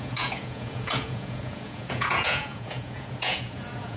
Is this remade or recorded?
remade